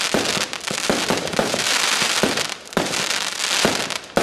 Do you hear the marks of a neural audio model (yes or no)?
yes